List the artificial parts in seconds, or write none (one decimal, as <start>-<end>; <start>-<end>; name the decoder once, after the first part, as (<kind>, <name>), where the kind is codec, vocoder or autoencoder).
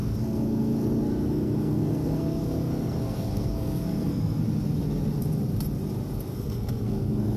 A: 0.0-4.4 (codec, SNAC); 6.3-7.4